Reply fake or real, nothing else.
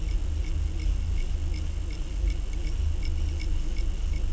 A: real